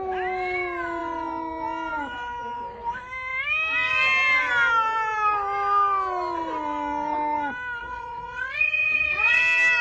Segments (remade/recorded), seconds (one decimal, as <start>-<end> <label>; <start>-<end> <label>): 0.0-7.8 recorded; 7.8-9.4 remade; 9.4-9.8 recorded